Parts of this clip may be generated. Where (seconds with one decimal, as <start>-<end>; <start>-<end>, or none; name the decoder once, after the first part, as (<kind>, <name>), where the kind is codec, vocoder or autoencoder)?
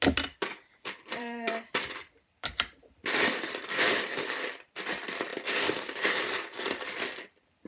0.0-5.3 (vocoder, BigVGAN v2)